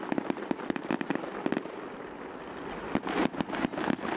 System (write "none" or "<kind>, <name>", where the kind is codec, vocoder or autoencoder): none